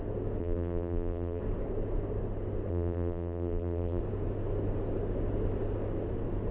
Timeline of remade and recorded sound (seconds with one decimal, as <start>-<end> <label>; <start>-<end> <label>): 0.0-0.4 recorded; 0.4-1.4 remade; 1.4-2.7 recorded; 2.7-4.0 remade; 4.0-6.5 recorded